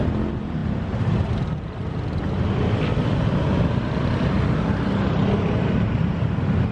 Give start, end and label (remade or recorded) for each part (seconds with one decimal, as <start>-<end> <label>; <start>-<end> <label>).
0.0-6.7 recorded